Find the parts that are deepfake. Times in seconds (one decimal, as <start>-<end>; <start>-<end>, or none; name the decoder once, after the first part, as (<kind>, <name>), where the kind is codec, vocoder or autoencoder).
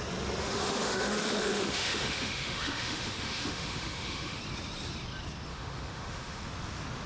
0.4-4.4 (autoencoder, DAC-VAE); 5.5-6.4